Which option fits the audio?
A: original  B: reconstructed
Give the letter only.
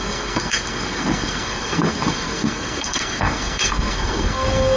B